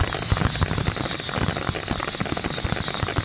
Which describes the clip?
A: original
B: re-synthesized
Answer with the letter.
A